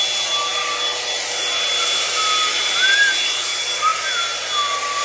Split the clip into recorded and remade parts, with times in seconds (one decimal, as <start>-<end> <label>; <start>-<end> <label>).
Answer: 0.0-5.0 recorded